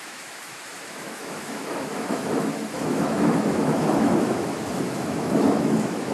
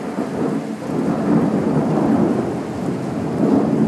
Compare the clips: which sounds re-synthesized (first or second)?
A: first